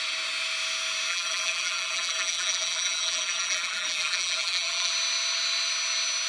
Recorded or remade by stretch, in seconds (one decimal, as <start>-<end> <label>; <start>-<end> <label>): 0.0-1.1 recorded; 1.1-4.9 remade; 4.9-6.3 recorded